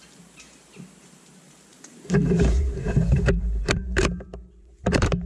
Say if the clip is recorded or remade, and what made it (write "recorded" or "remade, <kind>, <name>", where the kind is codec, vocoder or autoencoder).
remade, vocoder, BigVGAN v2